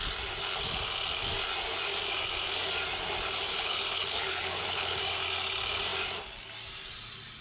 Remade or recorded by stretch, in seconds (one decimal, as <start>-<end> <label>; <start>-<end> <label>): 0.0-3.5 recorded; 3.5-5.0 remade; 5.0-7.4 recorded